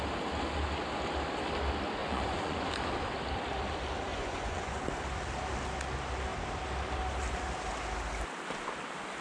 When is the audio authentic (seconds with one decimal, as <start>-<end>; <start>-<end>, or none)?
0.0-2.0; 2.7-4.1; 4.8-9.2